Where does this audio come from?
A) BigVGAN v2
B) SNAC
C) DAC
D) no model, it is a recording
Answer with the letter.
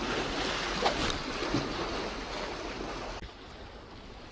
D